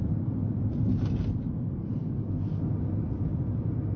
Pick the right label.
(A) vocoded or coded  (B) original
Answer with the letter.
B